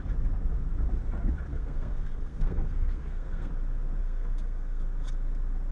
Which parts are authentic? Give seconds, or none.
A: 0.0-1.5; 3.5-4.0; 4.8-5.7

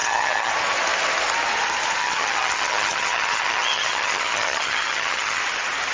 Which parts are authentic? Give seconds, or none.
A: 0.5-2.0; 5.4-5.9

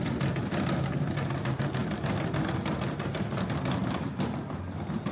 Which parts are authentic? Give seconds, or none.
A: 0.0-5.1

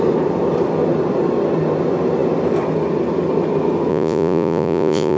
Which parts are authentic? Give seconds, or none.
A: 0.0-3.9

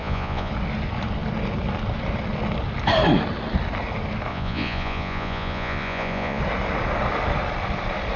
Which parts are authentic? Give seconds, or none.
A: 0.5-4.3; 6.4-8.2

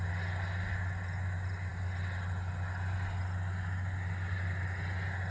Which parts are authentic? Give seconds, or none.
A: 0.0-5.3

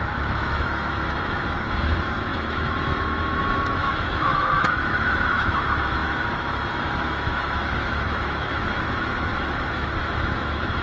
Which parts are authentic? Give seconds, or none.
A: none